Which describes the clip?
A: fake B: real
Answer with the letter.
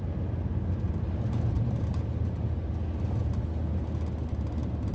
B